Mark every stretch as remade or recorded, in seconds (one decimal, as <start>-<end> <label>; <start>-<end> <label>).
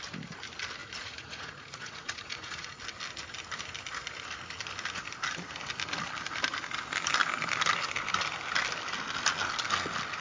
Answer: 0.0-0.8 recorded; 0.8-2.8 remade; 2.8-10.2 recorded